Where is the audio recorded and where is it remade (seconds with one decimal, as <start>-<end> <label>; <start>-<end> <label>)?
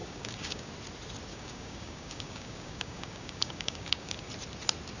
0.0-0.7 remade; 0.7-1.3 recorded; 1.3-4.3 remade; 4.3-5.0 recorded